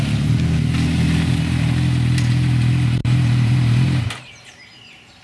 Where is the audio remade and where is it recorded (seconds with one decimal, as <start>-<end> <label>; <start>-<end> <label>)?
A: 0.0-3.0 recorded; 3.0-4.1 remade; 4.1-5.2 recorded